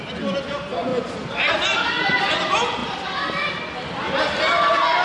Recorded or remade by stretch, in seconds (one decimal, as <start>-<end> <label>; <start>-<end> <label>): 0.0-2.8 recorded; 2.8-3.6 remade; 3.6-5.0 recorded